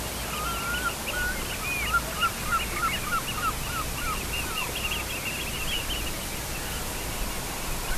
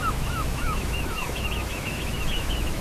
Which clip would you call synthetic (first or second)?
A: second